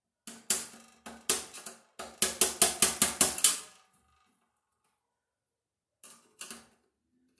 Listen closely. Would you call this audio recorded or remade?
recorded